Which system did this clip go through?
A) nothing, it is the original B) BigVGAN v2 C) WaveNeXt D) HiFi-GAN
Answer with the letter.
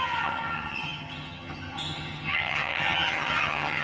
D